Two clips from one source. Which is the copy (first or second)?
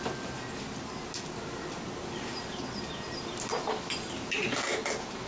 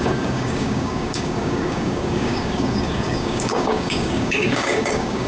second